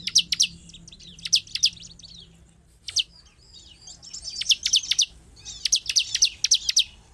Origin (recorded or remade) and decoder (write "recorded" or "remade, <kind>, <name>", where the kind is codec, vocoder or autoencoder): recorded